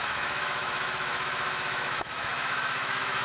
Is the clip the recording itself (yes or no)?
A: no